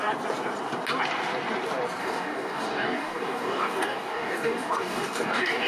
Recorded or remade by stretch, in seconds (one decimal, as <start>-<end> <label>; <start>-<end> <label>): 0.0-2.0 recorded; 2.0-5.7 remade